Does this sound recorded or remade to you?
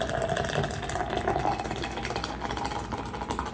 recorded